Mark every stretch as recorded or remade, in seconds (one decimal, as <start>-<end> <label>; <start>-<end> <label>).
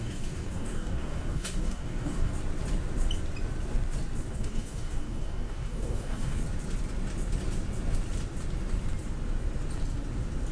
0.0-2.3 remade; 2.3-4.3 recorded; 4.3-6.4 remade; 6.4-10.5 recorded